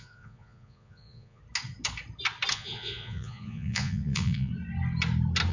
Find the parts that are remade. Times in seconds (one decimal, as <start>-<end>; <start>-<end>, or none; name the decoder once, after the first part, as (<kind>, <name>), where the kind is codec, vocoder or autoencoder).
0.0-1.4 (vocoder, Vocos); 2.5-4.5